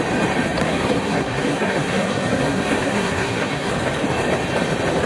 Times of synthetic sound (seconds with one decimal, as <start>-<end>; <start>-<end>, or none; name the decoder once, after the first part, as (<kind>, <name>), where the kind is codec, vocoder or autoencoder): 0.6-3.7 (codec, SNAC)